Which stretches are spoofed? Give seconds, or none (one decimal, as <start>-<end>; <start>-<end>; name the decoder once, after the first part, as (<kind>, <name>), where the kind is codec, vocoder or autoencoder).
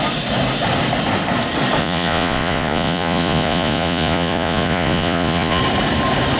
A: 1.8-5.6 (vocoder, Vocos)